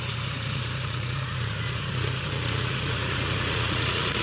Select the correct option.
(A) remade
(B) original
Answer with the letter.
A